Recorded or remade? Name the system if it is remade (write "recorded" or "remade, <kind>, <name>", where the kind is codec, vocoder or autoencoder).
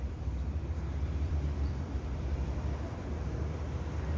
remade, vocoder, BigVGAN v2